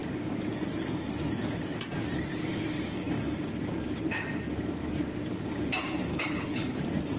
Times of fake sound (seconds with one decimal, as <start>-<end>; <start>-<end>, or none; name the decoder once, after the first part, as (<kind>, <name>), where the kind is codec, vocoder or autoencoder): 6.1-6.8 (codec, HILCodec)